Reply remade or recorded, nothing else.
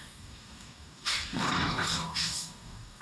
remade